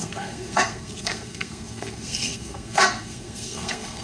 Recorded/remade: remade